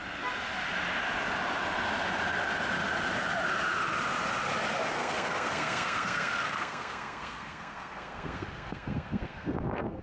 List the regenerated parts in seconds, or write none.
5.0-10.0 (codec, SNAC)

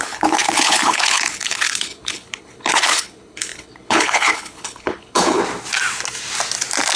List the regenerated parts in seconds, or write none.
0.0-5.4 (codec, HILCodec)

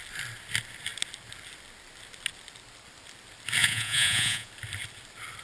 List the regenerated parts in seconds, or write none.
3.6-4.5 (vocoder, Vocos)

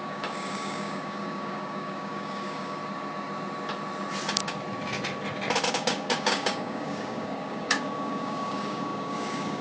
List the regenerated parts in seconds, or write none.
0.0-2.8 (codec, DAC); 5.7-9.6

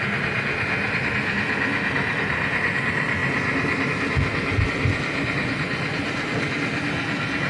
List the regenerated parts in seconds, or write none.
none

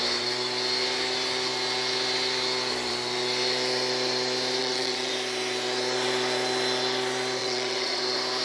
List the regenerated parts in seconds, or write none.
4.6-5.1 (vocoder, WaveNeXt); 7.4-8.0

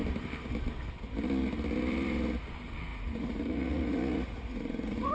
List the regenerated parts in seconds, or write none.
2.9-5.1 (vocoder, Vocos)